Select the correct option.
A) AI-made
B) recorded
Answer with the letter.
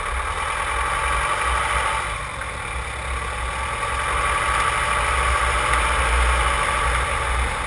B